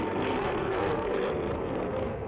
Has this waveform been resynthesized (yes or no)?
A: yes